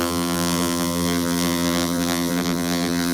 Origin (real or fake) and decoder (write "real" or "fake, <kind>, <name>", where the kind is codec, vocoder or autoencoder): fake, vocoder, BigVGAN v2